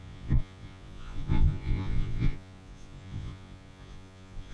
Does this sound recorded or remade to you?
remade